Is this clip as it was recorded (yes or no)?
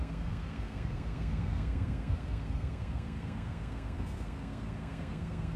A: no